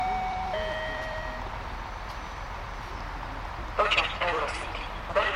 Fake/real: fake